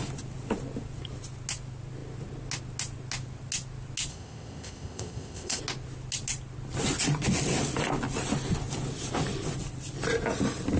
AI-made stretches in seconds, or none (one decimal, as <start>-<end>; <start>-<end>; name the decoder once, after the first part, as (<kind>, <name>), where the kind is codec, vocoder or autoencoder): 4.1-5.6 (codec, ZipCodec)